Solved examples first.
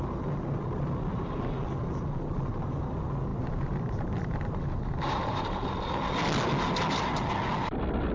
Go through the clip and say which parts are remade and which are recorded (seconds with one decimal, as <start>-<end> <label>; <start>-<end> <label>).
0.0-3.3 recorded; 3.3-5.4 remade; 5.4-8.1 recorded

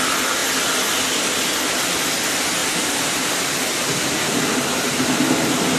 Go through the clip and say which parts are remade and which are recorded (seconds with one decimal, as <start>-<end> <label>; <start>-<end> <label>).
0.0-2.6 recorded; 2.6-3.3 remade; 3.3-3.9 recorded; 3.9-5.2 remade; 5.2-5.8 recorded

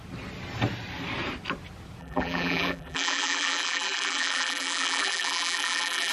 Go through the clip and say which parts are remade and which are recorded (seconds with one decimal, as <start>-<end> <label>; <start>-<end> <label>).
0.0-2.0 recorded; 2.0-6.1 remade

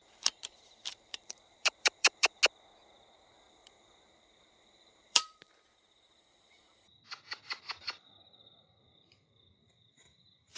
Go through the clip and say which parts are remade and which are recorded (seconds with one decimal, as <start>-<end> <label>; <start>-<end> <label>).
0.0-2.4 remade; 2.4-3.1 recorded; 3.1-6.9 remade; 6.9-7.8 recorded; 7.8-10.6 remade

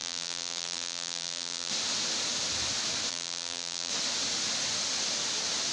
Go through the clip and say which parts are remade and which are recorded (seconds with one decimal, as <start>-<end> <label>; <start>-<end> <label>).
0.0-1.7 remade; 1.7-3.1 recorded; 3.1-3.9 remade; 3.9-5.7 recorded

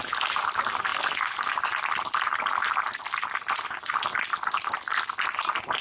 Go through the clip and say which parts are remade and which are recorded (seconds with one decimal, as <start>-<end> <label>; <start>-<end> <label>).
0.0-5.8 recorded

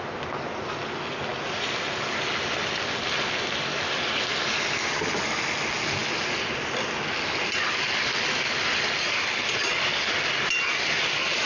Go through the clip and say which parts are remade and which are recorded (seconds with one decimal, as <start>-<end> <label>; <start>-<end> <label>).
0.0-11.5 recorded